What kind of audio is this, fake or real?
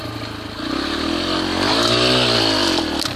real